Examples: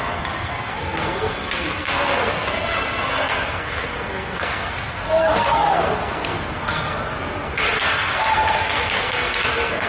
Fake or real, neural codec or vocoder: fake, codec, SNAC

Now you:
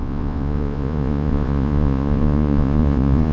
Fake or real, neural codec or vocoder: fake, vocoder, Vocos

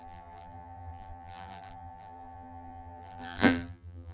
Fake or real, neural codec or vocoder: fake, vocoder, BigVGAN v2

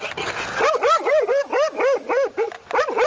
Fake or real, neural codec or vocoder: real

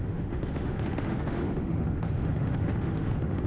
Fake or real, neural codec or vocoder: fake, autoencoder, DAC-VAE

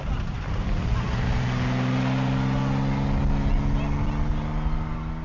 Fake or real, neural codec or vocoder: real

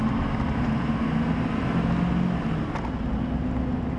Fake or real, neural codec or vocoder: real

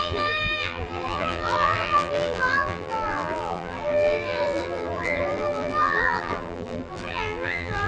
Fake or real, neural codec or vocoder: fake, vocoder, BigVGAN v2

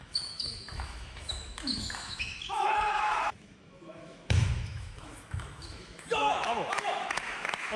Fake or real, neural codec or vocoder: fake, autoencoder, DAC-VAE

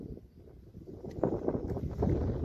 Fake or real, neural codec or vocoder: real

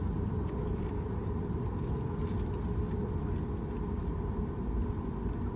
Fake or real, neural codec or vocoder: real